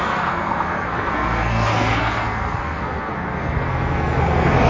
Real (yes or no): no